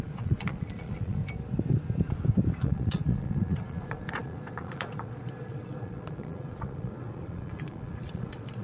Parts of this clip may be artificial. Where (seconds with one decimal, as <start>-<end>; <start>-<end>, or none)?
0.0-1.2; 2.6-8.6